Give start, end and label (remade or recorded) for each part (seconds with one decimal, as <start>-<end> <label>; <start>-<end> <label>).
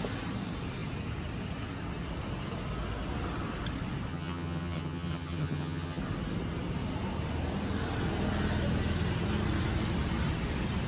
0.0-4.1 recorded; 4.1-6.0 remade; 6.0-10.9 recorded